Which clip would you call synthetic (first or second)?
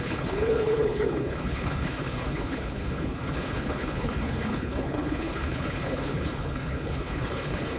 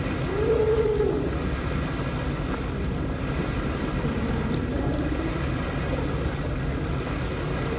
first